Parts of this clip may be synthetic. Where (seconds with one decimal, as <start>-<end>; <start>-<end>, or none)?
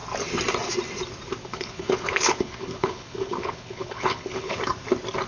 1.4-4.6